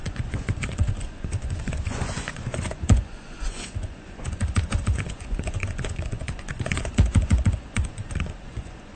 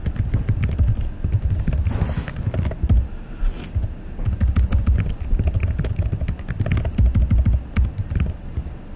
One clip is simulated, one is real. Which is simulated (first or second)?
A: first